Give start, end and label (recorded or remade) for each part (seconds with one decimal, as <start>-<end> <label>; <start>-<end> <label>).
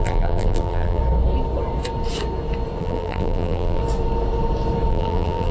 0.0-1.0 remade; 1.0-2.8 recorded; 2.8-3.8 remade; 3.8-4.9 recorded; 4.9-5.5 remade